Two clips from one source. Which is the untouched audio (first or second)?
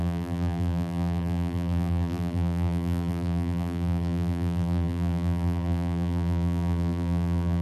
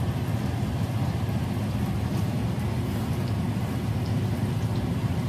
second